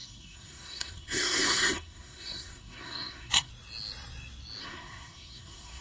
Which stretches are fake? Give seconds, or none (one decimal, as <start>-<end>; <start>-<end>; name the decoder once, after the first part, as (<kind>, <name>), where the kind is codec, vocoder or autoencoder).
0.0-3.5 (codec, SNAC); 4.6-5.8